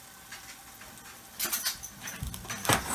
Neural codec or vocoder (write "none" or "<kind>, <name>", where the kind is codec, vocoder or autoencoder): none